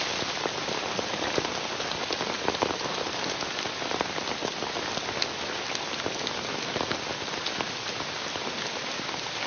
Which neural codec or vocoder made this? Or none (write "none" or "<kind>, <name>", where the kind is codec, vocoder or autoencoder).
none